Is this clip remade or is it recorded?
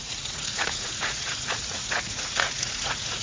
remade